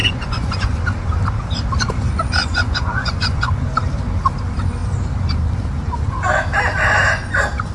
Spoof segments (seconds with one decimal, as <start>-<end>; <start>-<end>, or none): 0.0-0.8; 2.4-3.5